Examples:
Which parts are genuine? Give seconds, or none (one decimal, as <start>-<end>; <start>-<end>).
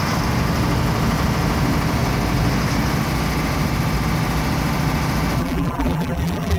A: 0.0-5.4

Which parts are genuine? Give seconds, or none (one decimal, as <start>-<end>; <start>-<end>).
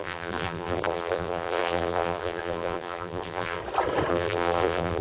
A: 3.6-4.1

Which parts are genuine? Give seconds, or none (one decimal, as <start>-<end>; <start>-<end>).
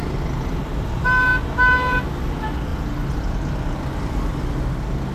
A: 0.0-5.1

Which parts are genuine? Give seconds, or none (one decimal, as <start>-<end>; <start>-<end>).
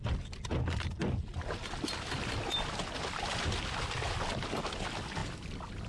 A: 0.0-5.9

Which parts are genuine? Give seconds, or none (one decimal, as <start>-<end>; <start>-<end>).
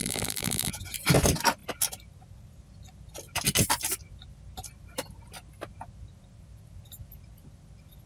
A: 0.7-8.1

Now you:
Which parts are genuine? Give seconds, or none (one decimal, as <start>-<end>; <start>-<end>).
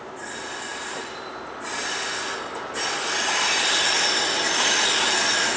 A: 0.0-5.6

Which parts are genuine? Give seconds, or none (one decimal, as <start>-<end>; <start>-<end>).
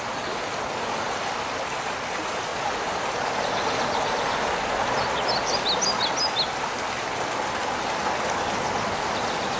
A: 0.0-2.5; 4.5-9.6